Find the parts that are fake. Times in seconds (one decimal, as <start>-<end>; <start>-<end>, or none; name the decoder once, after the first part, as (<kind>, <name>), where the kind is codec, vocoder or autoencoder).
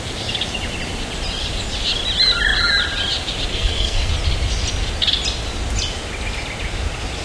3.5-4.1 (codec, SNAC)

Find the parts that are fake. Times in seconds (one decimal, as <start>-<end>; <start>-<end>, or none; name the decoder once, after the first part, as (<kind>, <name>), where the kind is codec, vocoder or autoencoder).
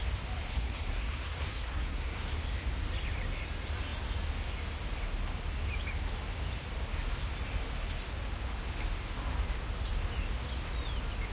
0.5-2.4 (codec, SNAC)